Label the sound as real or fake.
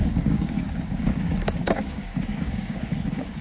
fake